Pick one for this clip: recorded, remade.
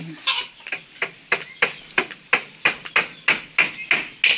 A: recorded